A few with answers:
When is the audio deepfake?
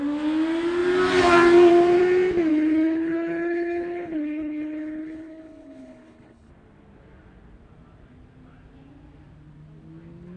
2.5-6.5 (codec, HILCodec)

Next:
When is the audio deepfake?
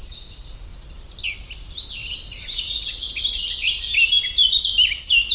none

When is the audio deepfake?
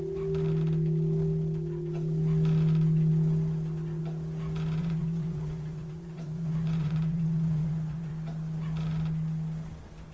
4.8-8.1 (vocoder, Vocos)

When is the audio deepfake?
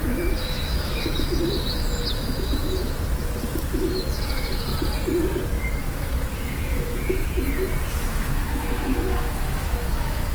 0.0-4.7 (autoencoder, DAC-VAE); 5.8-7.2; 7.9-10.3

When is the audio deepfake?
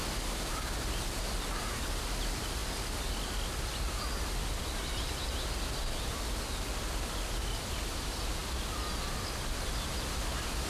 8.4-9.6 (vocoder, BigVGAN v2)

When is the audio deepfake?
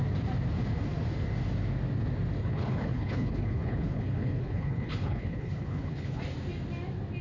2.4-6.2 (codec, HILCodec)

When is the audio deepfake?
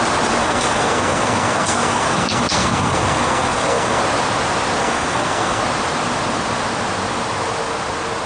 0.4-4.0 (codec, SNAC); 4.8-5.6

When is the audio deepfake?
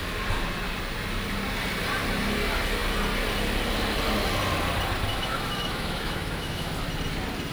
5.1-6.7 (autoencoder, DAC-VAE)